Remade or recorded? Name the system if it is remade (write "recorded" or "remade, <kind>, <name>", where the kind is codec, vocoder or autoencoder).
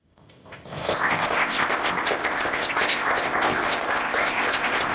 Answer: remade, codec, ZipCodec